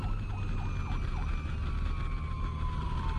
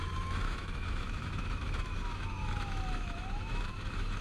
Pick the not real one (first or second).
second